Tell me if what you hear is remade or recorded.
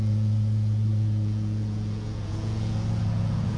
remade